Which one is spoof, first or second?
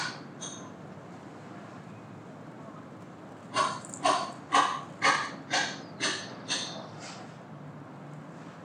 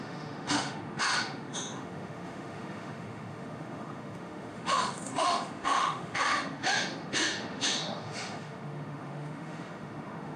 second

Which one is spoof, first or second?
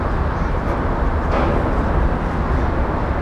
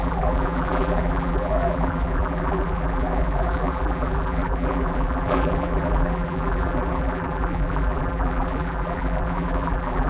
second